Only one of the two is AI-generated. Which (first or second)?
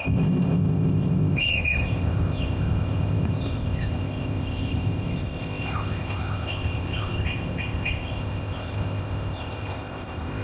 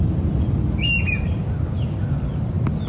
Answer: first